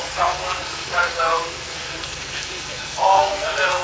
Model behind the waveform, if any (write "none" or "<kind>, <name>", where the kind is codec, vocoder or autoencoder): codec, SNAC